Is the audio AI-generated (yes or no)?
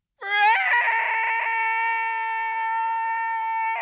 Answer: no